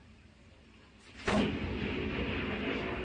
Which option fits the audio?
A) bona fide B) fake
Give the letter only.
A